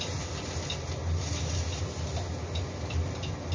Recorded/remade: recorded